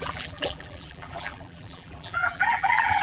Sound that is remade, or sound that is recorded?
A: remade